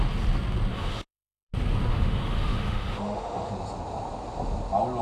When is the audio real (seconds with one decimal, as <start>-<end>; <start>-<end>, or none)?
0.0-0.7; 1.5-1.9; 3.5-5.0